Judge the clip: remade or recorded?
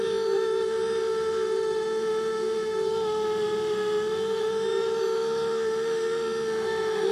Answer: remade